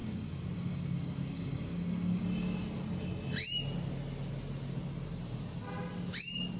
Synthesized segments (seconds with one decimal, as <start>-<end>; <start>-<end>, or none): 0.0-2.2

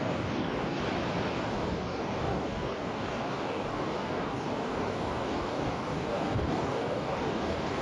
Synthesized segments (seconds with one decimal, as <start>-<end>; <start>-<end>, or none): 0.0-0.8; 1.3-7.8

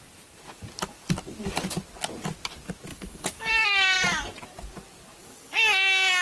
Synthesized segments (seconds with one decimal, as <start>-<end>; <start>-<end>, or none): 2.9-3.5; 5.2-6.2

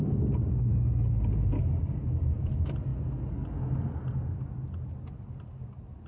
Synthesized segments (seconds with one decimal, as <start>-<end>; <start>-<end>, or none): none

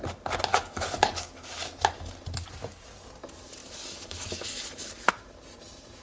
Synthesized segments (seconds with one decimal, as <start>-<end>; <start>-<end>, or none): 0.5-1.9; 3.6-5.1

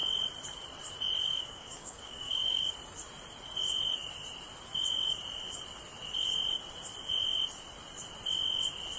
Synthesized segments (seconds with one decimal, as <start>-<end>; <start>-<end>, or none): 1.3-2.6

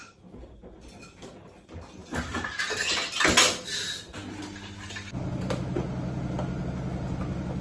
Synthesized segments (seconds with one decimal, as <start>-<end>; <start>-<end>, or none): none

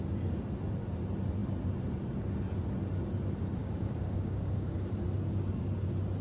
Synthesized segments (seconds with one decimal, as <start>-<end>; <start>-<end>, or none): 3.6-4.9